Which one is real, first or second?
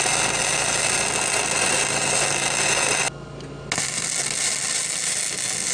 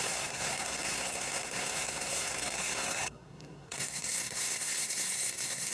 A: first